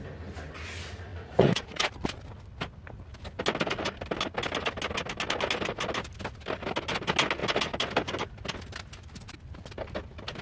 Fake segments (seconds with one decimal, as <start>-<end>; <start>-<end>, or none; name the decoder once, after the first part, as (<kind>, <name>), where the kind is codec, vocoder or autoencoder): 1.1-1.9 (vocoder, Vocos)